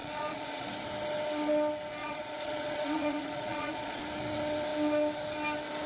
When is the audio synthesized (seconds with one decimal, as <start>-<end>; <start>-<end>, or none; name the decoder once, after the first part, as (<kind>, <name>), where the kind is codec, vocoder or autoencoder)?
0.0-0.7 (vocoder, Vocos); 2.0-4.0